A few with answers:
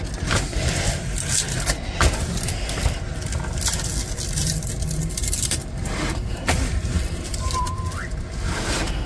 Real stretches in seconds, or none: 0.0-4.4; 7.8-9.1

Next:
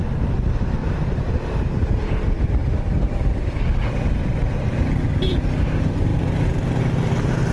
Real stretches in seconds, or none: 0.0-0.8; 2.2-2.6; 3.2-7.5